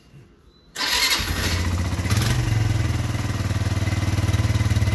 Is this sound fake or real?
real